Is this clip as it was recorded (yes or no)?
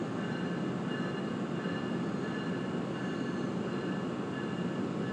yes